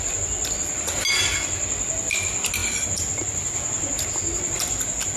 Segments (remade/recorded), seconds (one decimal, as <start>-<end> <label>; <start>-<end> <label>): 0.0-5.2 recorded